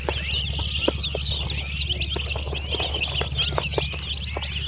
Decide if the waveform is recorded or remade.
recorded